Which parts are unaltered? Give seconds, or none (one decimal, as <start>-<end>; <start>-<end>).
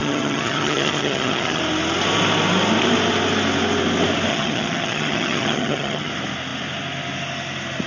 1.6-4.3; 6.1-7.9